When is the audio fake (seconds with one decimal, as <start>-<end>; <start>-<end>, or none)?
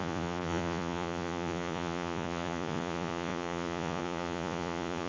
0.0-5.1